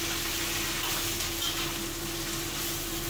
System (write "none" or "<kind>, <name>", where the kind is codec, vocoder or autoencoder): none